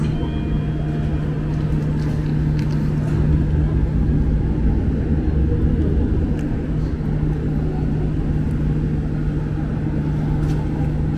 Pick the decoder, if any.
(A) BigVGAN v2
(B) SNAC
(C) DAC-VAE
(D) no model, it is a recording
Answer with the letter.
D